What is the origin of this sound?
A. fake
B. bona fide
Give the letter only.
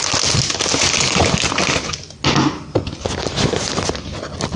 B